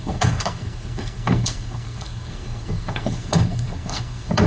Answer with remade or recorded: remade